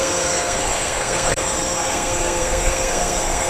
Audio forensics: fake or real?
fake